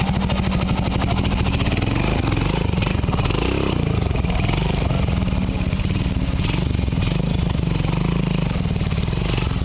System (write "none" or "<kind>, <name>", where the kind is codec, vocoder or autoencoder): none